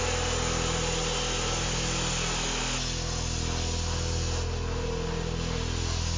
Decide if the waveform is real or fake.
real